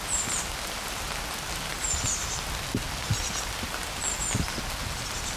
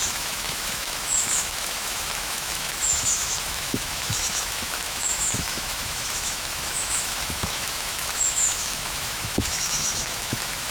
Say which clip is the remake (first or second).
second